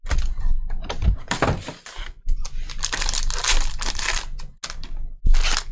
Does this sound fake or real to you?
real